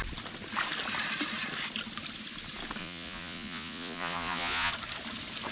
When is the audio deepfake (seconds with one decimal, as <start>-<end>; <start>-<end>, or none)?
2.8-4.7